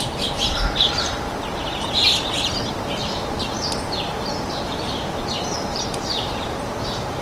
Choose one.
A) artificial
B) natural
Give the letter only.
A